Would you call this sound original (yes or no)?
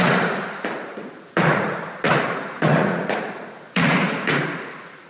no